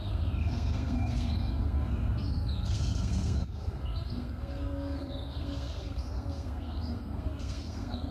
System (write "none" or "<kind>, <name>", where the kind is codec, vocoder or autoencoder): codec, SNAC